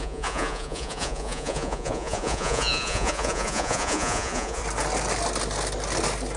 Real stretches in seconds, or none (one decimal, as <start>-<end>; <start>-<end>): 4.6-6.4